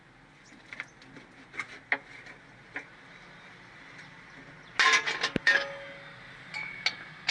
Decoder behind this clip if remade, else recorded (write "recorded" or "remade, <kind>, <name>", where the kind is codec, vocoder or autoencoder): recorded